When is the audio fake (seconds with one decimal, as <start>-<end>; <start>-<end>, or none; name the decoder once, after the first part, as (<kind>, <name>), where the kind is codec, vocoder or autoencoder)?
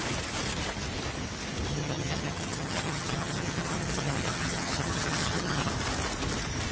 1.7-5.7 (vocoder, HiFi-GAN)